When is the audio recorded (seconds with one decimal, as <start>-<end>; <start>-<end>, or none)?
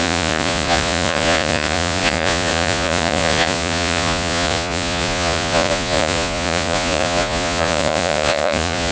none